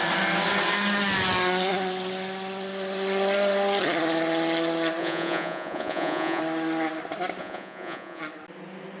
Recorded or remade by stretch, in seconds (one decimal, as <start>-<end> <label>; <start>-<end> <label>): 0.0-5.0 recorded; 5.0-6.4 remade; 6.4-7.4 recorded; 7.4-8.2 remade; 8.2-9.0 recorded